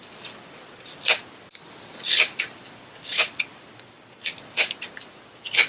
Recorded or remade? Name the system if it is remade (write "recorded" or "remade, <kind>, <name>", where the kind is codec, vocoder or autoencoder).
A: remade, vocoder, BigVGAN v2